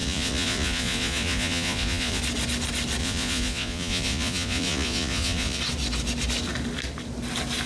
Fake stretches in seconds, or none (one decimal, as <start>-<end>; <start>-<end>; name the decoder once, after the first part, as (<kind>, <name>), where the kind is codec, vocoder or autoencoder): 0.0-2.2 (vocoder, Vocos); 3.0-5.6